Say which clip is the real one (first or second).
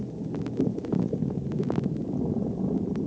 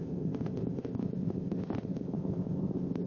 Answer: first